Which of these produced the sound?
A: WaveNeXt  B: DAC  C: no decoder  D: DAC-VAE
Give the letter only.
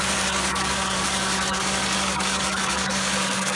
B